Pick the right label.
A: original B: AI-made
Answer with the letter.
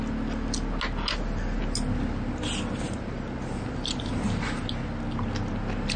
A